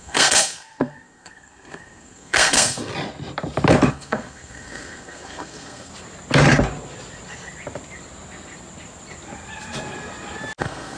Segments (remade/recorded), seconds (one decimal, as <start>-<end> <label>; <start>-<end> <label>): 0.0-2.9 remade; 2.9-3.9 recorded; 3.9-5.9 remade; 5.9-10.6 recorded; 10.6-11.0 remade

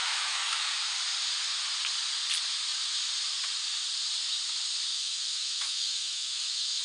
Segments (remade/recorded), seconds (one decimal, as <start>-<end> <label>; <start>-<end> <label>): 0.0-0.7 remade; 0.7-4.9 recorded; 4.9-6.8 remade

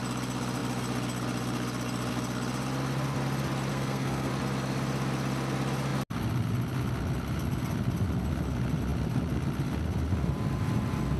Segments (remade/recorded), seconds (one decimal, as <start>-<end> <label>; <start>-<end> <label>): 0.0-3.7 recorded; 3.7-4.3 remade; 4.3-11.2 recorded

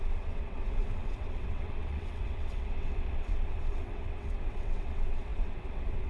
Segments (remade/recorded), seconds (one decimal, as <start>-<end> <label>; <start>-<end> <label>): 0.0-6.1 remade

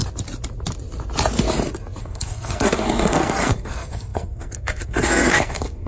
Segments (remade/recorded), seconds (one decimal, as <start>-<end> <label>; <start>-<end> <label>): 0.0-2.0 recorded; 2.0-5.9 remade

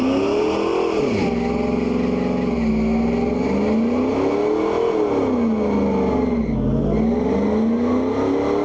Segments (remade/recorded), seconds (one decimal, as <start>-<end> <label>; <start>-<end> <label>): 0.0-8.6 recorded